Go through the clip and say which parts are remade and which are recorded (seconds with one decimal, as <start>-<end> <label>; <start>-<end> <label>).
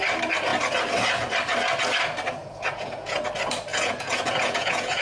0.0-2.4 recorded; 2.4-3.2 remade; 3.2-3.7 recorded; 3.7-5.0 remade